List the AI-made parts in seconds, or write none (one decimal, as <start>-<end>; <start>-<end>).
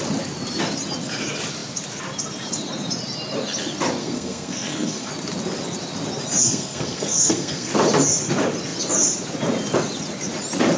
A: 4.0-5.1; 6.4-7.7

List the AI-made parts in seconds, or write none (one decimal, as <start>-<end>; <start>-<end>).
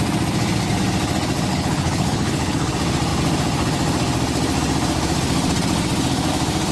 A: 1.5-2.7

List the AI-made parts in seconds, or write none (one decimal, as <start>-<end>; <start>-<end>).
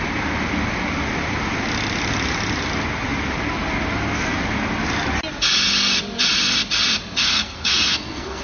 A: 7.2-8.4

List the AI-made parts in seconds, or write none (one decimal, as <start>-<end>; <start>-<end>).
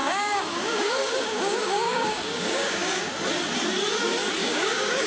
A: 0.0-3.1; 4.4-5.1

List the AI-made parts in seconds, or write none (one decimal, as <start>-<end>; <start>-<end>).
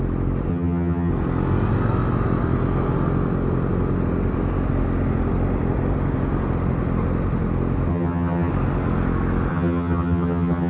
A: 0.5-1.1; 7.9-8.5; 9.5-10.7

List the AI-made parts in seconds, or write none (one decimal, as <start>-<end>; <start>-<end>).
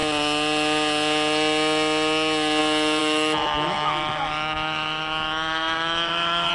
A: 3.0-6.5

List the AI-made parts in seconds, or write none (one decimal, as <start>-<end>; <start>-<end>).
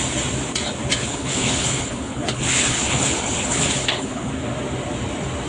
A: 1.0-4.3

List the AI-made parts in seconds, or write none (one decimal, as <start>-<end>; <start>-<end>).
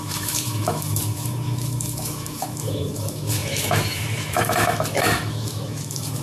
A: 0.0-6.2